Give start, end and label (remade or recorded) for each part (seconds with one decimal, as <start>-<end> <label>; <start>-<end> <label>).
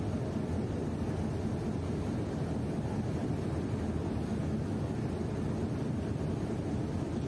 0.0-7.3 recorded